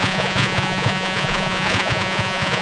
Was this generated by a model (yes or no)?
yes